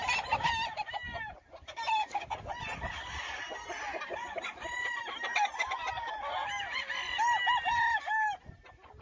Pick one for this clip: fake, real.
real